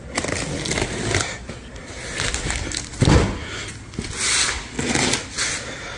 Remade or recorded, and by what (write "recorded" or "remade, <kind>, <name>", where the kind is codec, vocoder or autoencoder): recorded